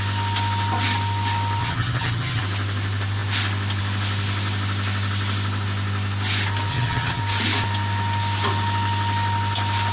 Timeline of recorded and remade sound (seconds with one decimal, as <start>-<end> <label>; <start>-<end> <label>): 0.0-1.6 recorded; 1.6-2.4 remade; 2.4-6.7 recorded; 6.7-7.2 remade; 7.2-9.9 recorded